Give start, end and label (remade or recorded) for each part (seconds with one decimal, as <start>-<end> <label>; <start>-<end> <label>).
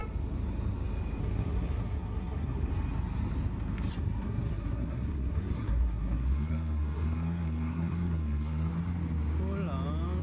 0.0-1.2 recorded; 1.2-2.7 remade; 2.7-3.9 recorded; 3.9-8.7 remade; 8.7-10.2 recorded